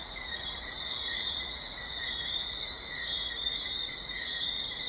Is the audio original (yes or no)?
no